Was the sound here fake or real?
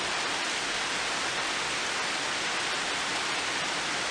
real